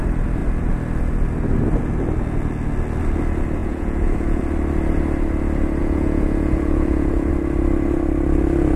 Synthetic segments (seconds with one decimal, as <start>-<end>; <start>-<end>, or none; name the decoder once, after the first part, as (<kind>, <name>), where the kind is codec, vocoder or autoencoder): 3.6-4.4 (vocoder, Vocos); 5.8-7.3